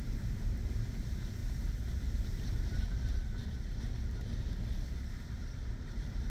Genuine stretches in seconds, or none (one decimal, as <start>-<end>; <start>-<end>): 1.4-2.0; 3.4-5.7